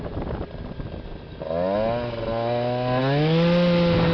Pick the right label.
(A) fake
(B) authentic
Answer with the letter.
B